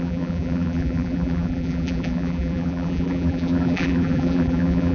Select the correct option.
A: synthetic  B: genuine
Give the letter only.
A